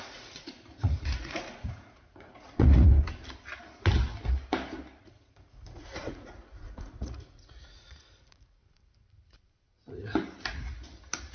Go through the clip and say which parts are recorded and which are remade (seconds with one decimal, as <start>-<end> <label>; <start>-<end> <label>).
0.0-2.9 remade; 2.9-5.0 recorded; 5.0-8.6 remade; 8.6-11.3 recorded